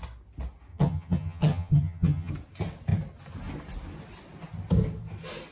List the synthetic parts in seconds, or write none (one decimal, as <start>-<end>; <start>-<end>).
0.7-2.3